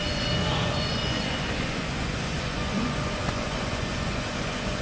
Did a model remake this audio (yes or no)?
yes